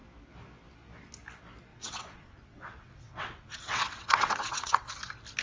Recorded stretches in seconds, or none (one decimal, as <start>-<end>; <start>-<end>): 0.0-1.7; 4.9-5.4

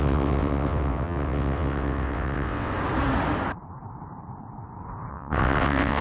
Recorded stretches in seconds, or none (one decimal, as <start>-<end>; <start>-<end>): 2.7-5.1

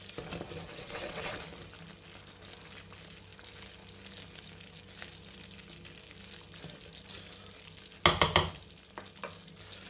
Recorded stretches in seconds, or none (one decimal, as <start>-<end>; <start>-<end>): 0.0-0.7; 1.4-9.9

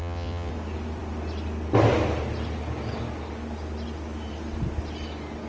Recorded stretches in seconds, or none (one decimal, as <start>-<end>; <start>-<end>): 0.5-5.5

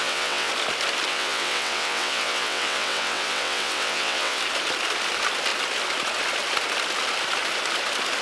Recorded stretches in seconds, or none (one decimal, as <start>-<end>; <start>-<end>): 0.5-1.1; 4.4-8.2

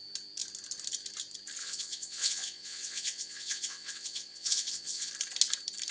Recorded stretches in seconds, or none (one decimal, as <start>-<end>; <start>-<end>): 0.0-1.6; 5.1-5.9